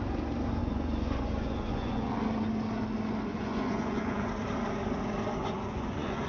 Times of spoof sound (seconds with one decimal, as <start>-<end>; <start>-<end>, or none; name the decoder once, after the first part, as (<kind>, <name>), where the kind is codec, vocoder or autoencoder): 0.6-2.2 (vocoder, Vocos); 3.3-4.3; 5.4-6.3